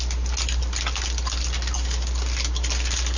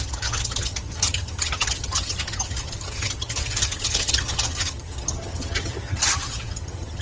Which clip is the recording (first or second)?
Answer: first